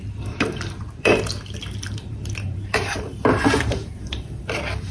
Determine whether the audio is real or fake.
fake